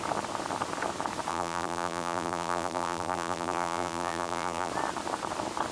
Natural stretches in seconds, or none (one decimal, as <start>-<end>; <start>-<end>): 0.0-1.3; 4.7-5.7